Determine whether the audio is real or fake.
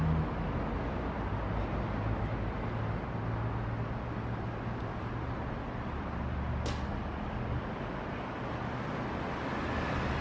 real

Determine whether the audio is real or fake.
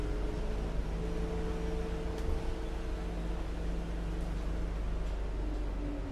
real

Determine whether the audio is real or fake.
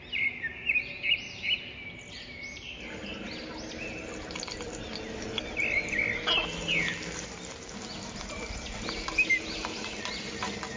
real